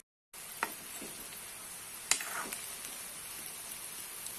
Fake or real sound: real